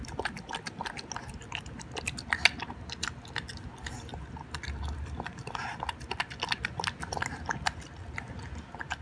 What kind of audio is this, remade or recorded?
recorded